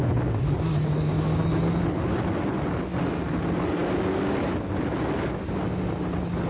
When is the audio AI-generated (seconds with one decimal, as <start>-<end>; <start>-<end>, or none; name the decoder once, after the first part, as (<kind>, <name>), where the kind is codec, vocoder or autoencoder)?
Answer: 0.0-1.4 (codec, DAC)